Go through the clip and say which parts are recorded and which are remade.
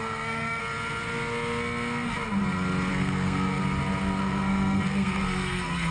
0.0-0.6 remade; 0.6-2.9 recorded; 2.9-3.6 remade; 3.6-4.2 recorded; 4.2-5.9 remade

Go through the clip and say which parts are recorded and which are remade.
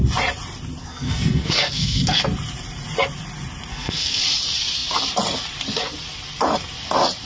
0.0-0.8 recorded; 0.8-2.2 remade; 2.2-3.7 recorded; 3.7-4.2 remade; 4.2-7.3 recorded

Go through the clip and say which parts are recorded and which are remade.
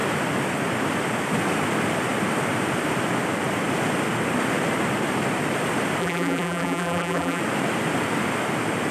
0.0-6.0 recorded; 6.0-7.4 remade; 7.4-8.9 recorded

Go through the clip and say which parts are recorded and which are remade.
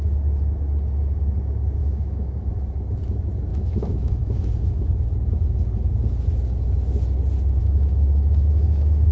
0.0-1.8 recorded; 1.8-2.5 remade; 2.5-3.5 recorded; 3.5-4.9 remade; 4.9-7.6 recorded; 7.6-9.1 remade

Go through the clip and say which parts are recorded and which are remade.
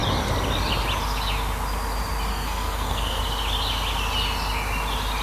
0.0-2.3 recorded; 2.3-3.2 remade; 3.2-5.2 recorded